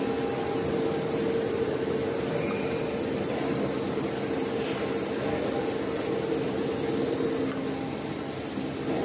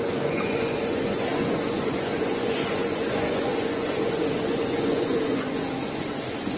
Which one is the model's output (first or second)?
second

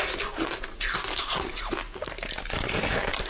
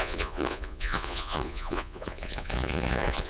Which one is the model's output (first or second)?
second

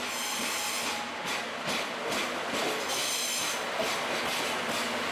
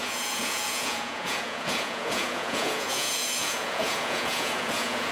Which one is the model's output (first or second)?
second